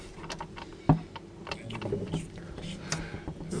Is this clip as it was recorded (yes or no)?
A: yes